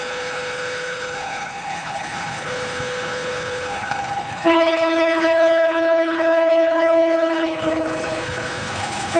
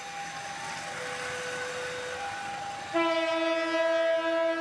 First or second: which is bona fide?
second